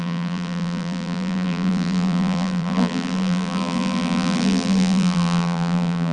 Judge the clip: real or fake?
fake